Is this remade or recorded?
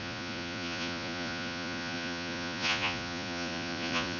remade